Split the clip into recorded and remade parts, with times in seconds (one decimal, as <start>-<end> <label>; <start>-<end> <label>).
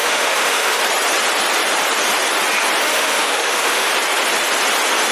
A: 0.0-0.8 remade; 0.8-2.8 recorded; 2.8-3.9 remade; 3.9-5.1 recorded